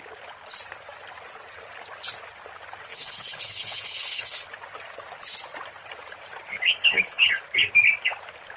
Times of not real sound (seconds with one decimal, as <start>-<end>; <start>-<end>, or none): 2.9-4.5; 6.5-7.3